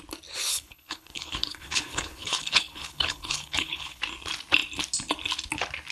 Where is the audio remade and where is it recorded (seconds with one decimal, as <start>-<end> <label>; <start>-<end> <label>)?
0.0-0.5 recorded; 0.5-4.0 remade; 4.0-5.9 recorded